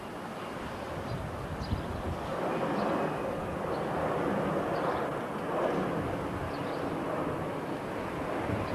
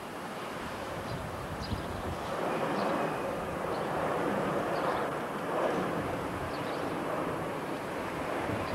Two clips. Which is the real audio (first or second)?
first